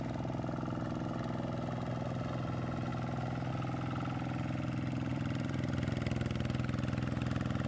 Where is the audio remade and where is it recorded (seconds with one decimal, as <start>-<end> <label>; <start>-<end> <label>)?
0.0-5.1 recorded; 5.1-5.9 remade; 5.9-7.7 recorded